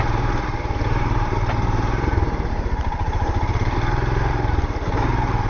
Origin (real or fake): fake